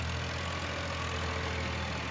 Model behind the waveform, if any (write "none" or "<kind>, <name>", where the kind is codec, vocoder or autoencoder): none